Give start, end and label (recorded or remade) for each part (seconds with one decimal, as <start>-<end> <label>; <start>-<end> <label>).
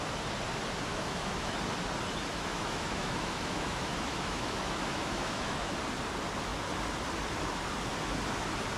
0.0-0.9 recorded; 0.9-1.5 remade; 1.5-2.3 recorded; 2.3-5.7 remade; 5.7-8.8 recorded